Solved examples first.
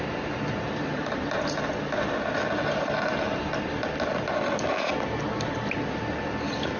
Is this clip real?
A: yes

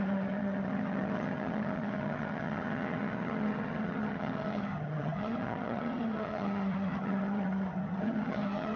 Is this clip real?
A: no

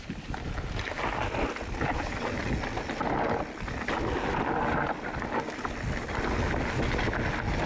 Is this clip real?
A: yes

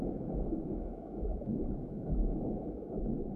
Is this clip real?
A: no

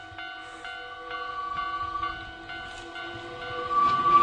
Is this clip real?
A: yes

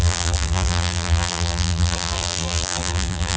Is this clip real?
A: no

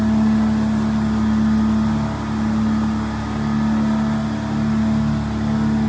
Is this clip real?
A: yes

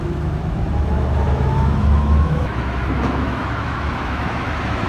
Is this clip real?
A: no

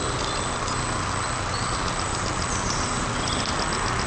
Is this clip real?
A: yes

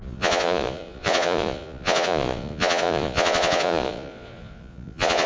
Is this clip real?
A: no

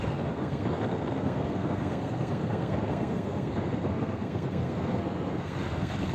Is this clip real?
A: no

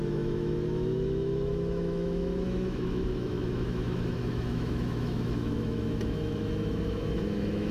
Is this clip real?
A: no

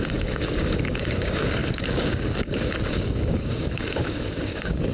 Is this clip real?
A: no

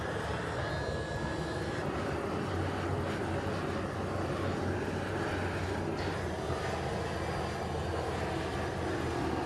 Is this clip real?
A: yes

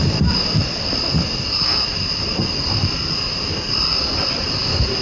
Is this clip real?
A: no